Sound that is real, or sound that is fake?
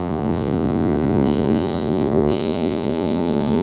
fake